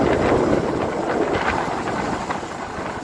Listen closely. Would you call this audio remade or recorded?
recorded